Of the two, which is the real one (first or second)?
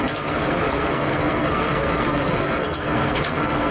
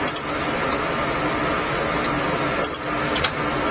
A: second